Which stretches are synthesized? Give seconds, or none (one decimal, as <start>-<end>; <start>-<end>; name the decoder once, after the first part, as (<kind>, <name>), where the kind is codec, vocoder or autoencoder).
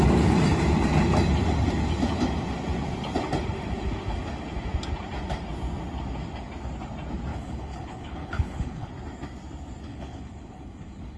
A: 7.3-8.9 (codec, HILCodec); 9.9-11.2